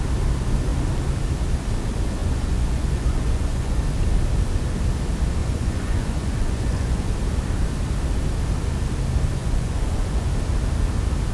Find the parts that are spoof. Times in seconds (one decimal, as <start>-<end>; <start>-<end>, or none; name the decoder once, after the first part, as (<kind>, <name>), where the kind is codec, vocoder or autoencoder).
2.2-3.8 (vocoder, Vocos); 5.4-7.1; 9.4-10.3